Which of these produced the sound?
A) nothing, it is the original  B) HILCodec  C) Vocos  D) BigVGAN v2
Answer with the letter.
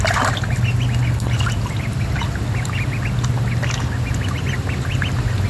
A